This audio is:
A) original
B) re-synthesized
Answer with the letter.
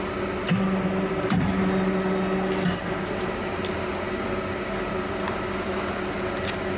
A